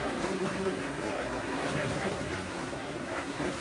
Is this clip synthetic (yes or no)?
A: yes